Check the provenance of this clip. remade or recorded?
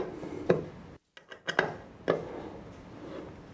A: recorded